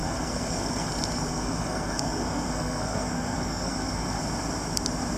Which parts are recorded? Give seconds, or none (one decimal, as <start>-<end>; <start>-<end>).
0.9-1.3; 4.2-5.2